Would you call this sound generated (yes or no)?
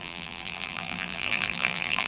yes